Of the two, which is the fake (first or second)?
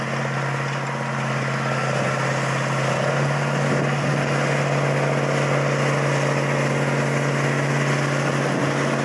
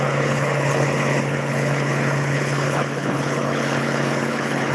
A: second